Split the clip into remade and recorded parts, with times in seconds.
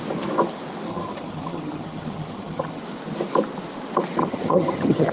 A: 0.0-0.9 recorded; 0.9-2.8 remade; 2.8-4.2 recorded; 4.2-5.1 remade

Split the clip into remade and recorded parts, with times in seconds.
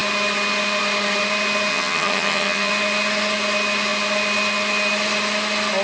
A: 0.0-1.7 recorded; 1.7-2.7 remade; 2.7-5.8 recorded